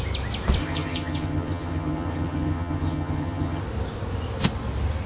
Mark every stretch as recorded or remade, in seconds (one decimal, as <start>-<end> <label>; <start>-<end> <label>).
0.0-0.6 recorded; 0.6-3.6 remade; 3.6-5.1 recorded